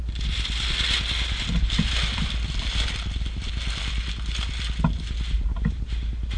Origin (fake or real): real